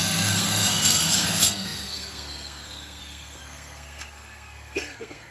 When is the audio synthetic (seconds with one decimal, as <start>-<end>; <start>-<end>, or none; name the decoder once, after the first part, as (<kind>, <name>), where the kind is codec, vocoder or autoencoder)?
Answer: 0.0-5.3 (codec, SNAC)